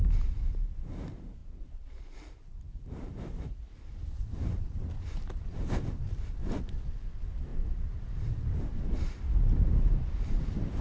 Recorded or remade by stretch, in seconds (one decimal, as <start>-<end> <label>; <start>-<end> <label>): 0.0-1.4 recorded; 1.4-6.1 remade; 6.1-10.8 recorded